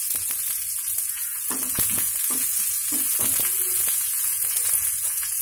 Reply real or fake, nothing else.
fake